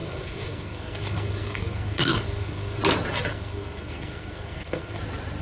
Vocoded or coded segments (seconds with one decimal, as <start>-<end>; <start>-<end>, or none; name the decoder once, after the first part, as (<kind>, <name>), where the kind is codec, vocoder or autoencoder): 0.0-2.8 (codec, SNAC); 3.3-5.0